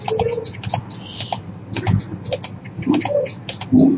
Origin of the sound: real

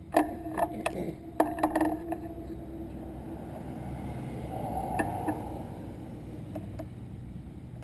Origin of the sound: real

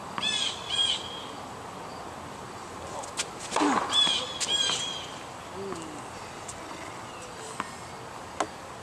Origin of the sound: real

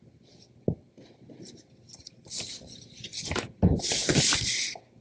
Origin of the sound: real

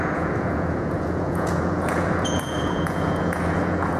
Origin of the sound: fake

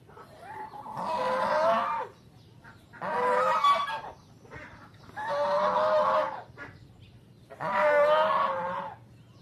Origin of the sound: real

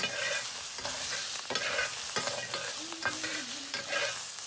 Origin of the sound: real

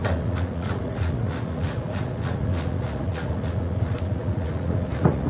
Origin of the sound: fake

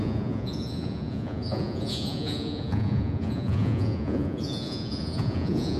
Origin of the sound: fake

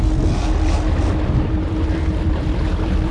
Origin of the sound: fake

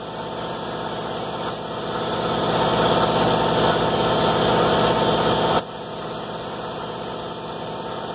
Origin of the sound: real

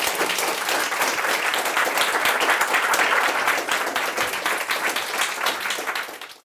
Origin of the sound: real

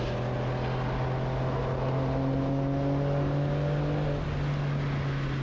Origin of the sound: real